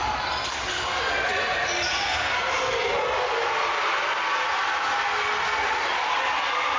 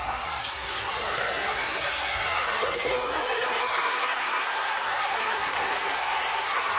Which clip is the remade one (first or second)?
second